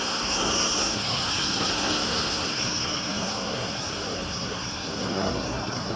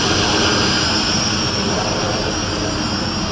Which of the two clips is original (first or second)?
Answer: second